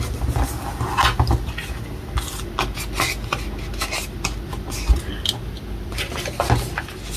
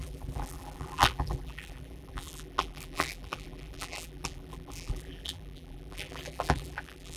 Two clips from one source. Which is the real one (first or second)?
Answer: first